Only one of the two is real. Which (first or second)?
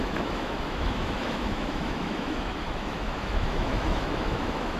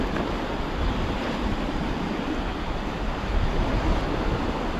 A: second